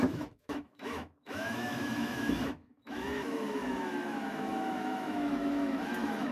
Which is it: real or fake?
fake